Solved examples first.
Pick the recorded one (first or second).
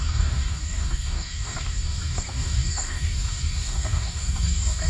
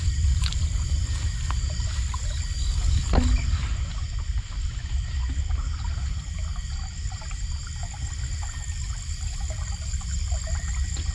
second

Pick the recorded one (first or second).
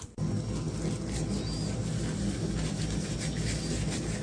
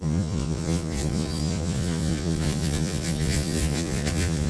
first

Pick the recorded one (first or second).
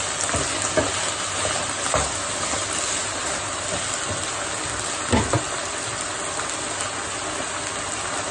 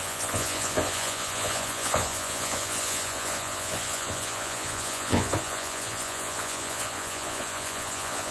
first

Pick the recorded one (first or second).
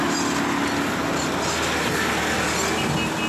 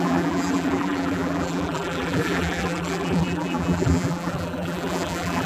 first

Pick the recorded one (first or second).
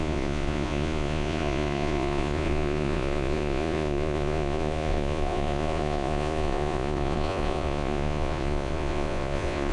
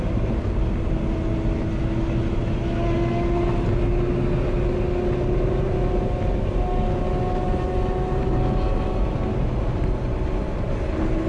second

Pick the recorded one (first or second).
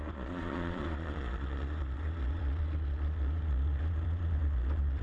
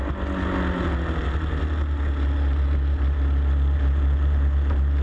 second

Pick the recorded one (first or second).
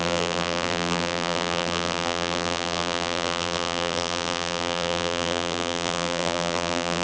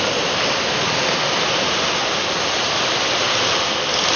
second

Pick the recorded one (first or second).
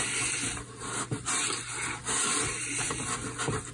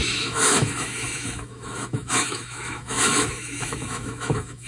first